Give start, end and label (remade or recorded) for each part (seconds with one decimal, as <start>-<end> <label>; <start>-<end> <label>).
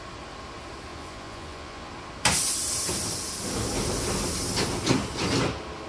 0.0-0.9 recorded; 0.9-1.9 remade; 1.9-5.9 recorded